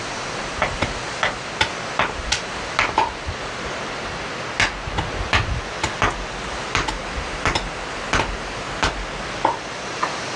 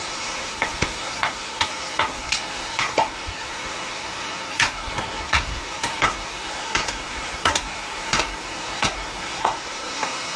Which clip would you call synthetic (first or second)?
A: second